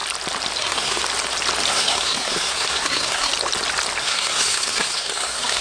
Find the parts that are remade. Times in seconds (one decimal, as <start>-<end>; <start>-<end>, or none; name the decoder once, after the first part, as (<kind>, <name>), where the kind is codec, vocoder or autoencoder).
0.6-1.0 (codec, SNAC); 1.7-3.3; 4.0-5.6